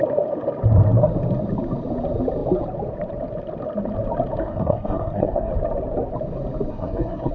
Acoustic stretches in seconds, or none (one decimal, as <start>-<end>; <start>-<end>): 0.0-4.4; 5.5-6.7

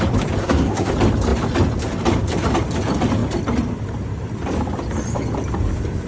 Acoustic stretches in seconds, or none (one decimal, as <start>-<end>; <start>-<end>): 0.0-0.4; 0.9-6.1